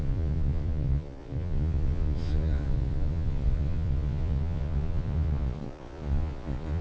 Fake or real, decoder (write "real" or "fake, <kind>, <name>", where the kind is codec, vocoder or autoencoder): fake, vocoder, Vocos